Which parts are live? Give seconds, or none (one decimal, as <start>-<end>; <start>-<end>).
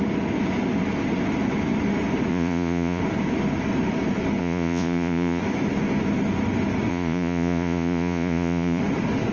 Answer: 0.0-2.3; 3.0-4.4; 5.4-6.9; 8.8-9.3